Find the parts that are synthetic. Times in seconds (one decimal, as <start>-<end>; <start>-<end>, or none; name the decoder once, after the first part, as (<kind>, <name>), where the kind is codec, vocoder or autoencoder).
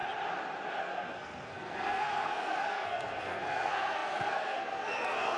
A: 0.8-5.4 (codec, SNAC)